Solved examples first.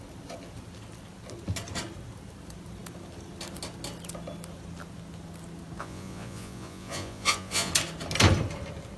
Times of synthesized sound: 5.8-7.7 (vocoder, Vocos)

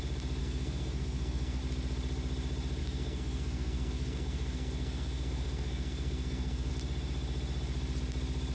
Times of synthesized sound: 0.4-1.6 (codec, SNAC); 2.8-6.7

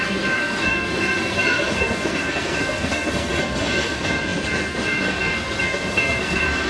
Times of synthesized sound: 0.0-6.7 (codec, SNAC)